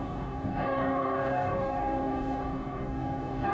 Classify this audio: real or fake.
fake